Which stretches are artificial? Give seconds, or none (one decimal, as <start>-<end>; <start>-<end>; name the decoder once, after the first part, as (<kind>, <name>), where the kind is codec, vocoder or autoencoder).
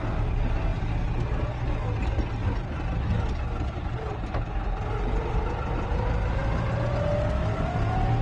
none